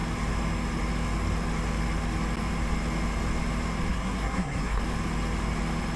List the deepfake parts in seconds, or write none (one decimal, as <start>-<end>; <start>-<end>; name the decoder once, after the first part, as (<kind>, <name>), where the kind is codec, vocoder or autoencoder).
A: 3.9-4.8 (codec, SNAC)